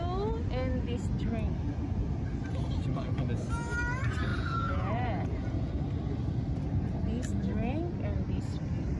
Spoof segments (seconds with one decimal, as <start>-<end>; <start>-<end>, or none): 4.3-5.8